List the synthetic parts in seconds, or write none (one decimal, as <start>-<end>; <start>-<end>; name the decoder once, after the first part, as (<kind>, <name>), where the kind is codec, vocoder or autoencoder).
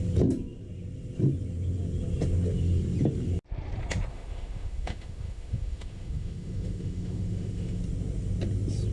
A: 4.1-7.8 (autoencoder, DAC-VAE)